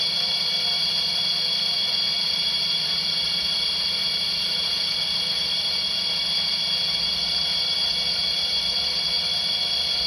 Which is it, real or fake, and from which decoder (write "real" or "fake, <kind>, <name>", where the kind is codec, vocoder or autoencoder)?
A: fake, vocoder, BigVGAN v2